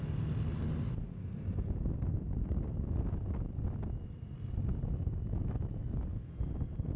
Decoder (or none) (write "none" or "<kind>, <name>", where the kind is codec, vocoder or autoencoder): none